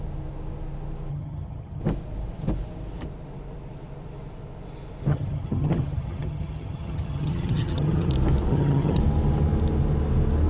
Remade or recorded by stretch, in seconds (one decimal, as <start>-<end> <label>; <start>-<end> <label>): 0.0-1.1 recorded; 1.1-1.8 remade; 1.8-5.1 recorded; 5.1-8.1 remade; 8.1-8.5 recorded; 8.5-9.0 remade; 9.0-10.5 recorded